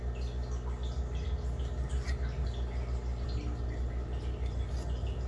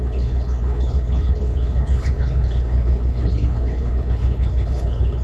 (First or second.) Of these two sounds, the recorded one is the first